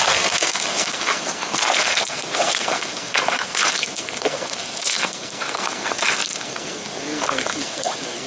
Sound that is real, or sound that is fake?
fake